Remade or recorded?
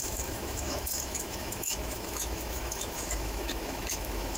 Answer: remade